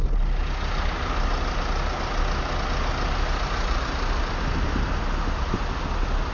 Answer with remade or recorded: recorded